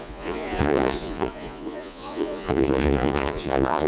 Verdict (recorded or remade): remade